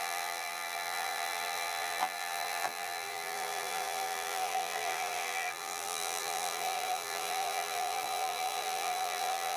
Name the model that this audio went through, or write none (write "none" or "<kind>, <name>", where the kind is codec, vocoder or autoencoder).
vocoder, BigVGAN v2